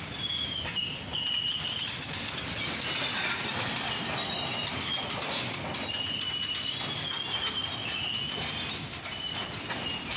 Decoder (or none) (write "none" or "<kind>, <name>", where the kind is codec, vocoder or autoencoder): none